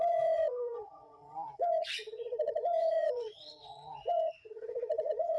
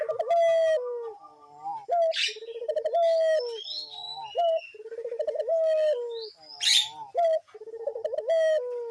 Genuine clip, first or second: second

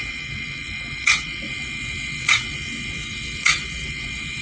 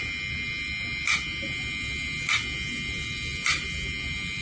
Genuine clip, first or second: second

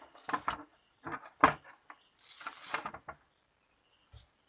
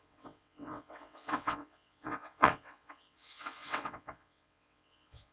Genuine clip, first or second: first